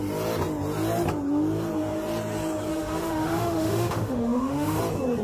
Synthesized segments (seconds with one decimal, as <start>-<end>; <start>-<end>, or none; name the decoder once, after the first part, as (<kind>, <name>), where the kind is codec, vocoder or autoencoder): 2.7-4.8 (autoencoder, DAC-VAE)

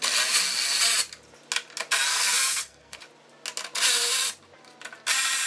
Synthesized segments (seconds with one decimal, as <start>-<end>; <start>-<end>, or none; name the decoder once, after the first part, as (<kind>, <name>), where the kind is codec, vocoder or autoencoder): 2.1-3.0 (codec, SNAC)

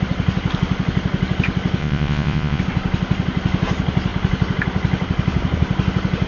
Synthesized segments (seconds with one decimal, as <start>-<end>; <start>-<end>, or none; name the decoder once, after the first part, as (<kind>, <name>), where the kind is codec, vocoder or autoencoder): 1.8-2.6 (vocoder, Vocos)

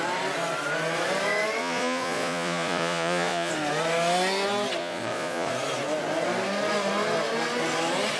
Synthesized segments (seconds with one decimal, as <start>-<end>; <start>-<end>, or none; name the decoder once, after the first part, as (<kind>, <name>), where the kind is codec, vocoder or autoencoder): 1.6-3.5 (vocoder, Vocos); 4.8-5.5

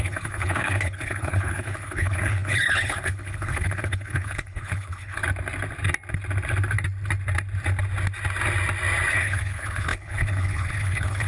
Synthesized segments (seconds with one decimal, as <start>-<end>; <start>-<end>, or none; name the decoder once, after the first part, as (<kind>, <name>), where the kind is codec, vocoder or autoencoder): 0.0-5.2 (codec, HILCodec); 9.1-11.3

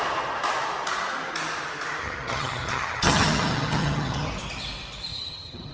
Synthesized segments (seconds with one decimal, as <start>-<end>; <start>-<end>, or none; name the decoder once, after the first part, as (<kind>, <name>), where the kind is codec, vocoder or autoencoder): 2.0-4.3 (vocoder, HiFi-GAN); 5.1-5.7

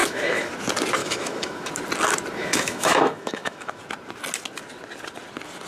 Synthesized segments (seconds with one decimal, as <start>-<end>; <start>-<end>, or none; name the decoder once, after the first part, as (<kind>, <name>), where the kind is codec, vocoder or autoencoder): 0.0-0.5 (autoencoder, DAC-VAE); 1.0-1.7; 2.4-3.8